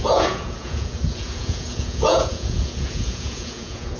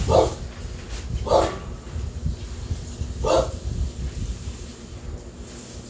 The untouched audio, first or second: second